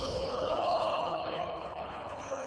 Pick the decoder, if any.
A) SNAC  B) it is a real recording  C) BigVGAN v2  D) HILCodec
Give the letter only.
D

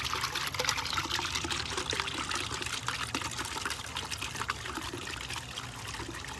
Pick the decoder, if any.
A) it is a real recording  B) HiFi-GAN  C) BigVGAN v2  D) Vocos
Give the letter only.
A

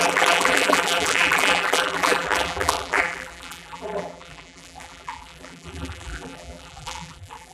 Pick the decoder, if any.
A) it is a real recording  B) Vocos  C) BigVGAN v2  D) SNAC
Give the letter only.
C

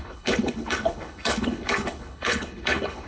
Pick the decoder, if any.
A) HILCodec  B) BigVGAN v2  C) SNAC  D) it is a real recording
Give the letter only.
A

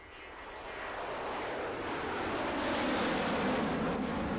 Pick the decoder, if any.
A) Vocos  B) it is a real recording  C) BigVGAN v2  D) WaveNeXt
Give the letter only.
B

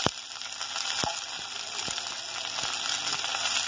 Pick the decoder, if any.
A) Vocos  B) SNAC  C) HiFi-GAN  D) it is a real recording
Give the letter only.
D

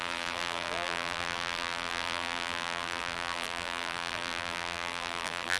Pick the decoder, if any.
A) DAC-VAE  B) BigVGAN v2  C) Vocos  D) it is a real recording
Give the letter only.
B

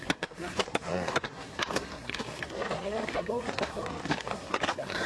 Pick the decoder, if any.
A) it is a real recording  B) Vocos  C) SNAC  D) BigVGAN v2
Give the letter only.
C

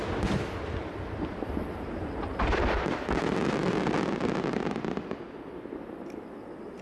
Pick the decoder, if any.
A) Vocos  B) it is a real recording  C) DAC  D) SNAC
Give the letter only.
B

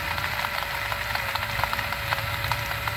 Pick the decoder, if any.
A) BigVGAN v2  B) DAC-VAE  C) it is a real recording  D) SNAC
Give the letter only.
C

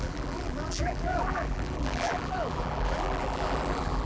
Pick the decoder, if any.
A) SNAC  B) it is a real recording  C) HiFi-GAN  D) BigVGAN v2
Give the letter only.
D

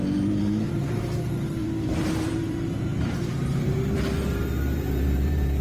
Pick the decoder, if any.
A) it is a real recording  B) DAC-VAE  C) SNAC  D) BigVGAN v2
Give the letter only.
D